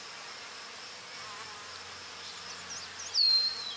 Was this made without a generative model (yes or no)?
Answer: yes